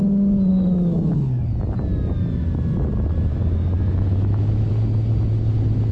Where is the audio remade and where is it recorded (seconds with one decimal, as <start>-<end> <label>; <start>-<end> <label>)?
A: 0.0-0.5 recorded; 0.5-1.5 remade; 1.5-3.3 recorded; 3.3-4.7 remade; 4.7-5.9 recorded

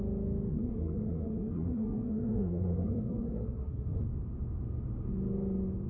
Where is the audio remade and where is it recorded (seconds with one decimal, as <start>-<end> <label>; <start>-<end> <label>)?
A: 0.0-0.5 recorded; 0.5-4.0 remade; 4.0-5.9 recorded

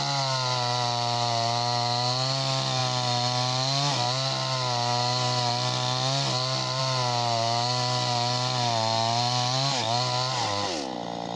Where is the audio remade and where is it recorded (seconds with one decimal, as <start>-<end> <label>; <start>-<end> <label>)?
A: 0.0-11.4 recorded